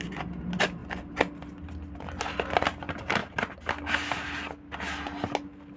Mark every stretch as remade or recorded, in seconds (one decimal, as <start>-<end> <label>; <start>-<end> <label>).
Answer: 0.0-5.8 recorded